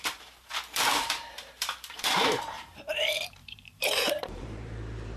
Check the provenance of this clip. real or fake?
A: fake